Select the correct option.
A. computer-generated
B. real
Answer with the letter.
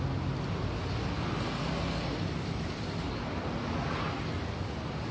B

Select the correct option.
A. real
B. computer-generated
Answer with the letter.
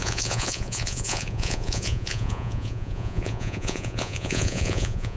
B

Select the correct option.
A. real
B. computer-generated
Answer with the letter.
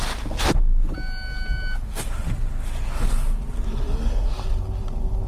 A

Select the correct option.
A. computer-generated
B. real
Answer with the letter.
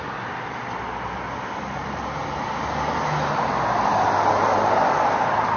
B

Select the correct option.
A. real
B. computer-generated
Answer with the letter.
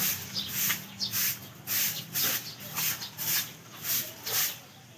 A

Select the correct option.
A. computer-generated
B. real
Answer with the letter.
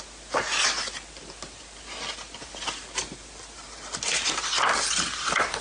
B